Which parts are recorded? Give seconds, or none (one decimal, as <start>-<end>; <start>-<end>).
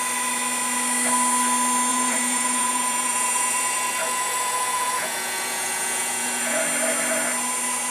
0.0-1.9; 6.6-7.9